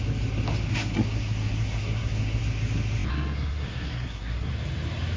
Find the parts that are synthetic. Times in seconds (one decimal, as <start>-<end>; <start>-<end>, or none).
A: 0.7-2.4; 3.1-4.5